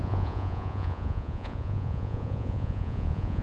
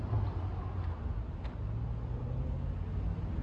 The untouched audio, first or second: second